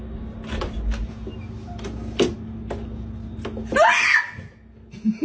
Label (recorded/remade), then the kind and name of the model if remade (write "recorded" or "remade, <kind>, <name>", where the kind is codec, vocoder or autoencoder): recorded